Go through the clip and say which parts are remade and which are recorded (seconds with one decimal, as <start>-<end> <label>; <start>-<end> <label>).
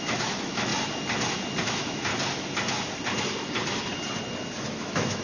0.0-0.7 remade; 0.7-1.6 recorded; 1.6-2.1 remade; 2.1-4.7 recorded; 4.7-5.2 remade